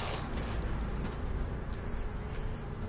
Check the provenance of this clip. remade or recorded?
recorded